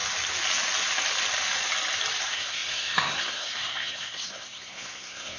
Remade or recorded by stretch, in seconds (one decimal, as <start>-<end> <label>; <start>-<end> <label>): 0.0-2.2 recorded; 2.2-5.4 remade